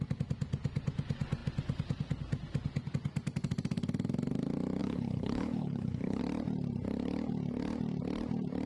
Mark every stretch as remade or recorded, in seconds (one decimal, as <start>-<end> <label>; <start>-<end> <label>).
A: 0.0-4.8 recorded; 4.8-6.2 remade; 6.2-8.7 recorded